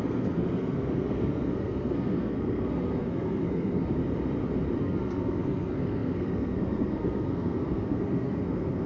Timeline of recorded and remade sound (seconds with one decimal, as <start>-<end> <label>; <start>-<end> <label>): 0.0-4.0 remade; 4.0-4.8 recorded; 4.8-8.9 remade